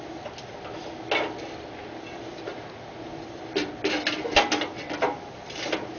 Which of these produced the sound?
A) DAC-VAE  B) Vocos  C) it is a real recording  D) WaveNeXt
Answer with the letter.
C